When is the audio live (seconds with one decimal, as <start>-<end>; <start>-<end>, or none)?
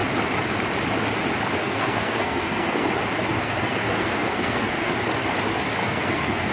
0.0-1.6; 2.9-3.4; 4.9-5.8